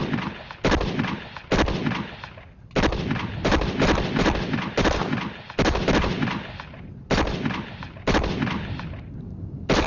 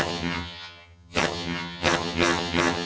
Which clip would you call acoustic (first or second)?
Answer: first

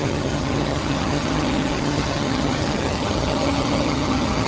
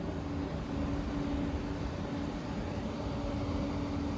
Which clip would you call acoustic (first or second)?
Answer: second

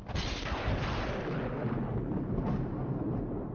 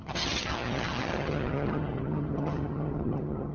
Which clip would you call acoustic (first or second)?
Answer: first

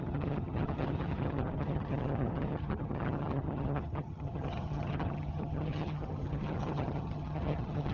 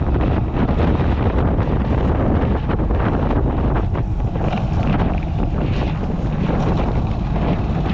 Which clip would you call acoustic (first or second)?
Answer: second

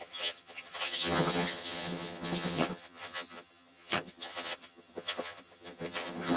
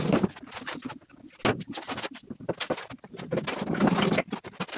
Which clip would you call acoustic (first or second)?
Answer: second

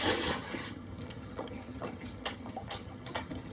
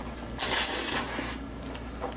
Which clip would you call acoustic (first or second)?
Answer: second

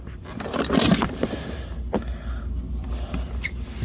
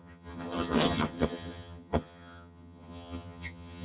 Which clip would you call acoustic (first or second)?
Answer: first